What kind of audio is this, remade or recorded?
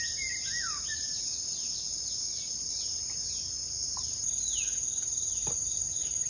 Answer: recorded